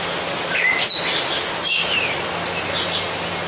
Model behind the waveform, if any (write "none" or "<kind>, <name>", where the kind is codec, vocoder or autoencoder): none